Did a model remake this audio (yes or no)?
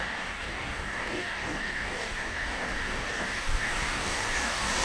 yes